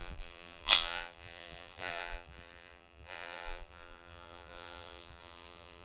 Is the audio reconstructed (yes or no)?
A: yes